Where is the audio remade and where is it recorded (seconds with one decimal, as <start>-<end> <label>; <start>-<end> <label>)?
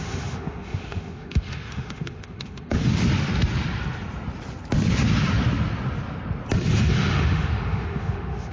0.0-2.9 remade; 2.9-6.8 recorded; 6.8-8.5 remade